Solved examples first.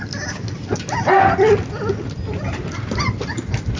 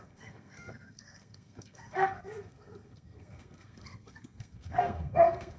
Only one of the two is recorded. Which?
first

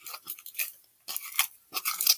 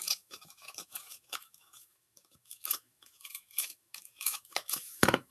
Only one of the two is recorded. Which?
first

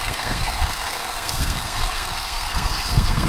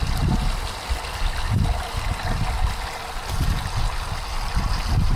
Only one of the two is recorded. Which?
second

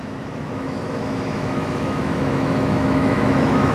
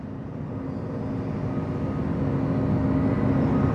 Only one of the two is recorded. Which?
second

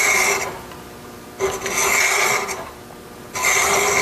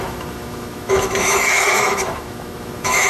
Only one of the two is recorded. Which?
first